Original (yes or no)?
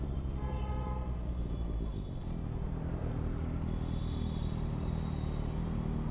yes